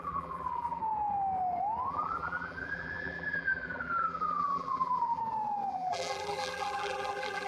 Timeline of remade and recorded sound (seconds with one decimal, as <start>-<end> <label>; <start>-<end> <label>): 0.0-0.8 remade; 0.8-1.9 recorded; 1.9-5.2 remade; 5.2-5.7 recorded; 5.7-7.5 remade